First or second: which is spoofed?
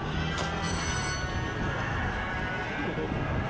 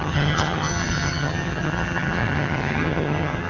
second